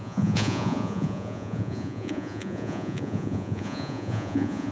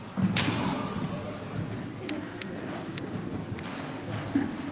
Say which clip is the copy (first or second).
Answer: first